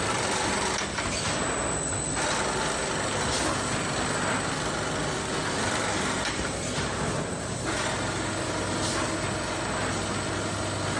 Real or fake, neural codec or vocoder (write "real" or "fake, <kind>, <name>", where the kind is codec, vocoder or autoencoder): real